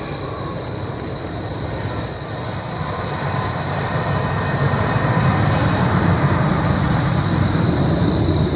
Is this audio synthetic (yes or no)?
yes